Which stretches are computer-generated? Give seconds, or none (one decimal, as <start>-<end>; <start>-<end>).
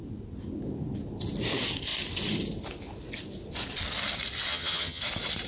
4.5-5.0